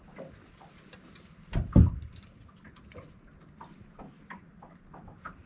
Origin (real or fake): real